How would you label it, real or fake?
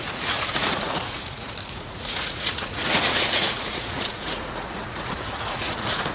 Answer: fake